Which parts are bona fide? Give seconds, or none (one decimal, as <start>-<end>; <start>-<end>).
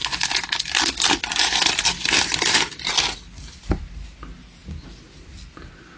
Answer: 0.0-6.0